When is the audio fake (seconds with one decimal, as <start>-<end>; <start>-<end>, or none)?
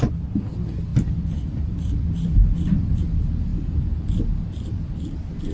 none